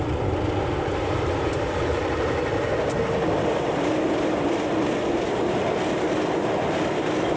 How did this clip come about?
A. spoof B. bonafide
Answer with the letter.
B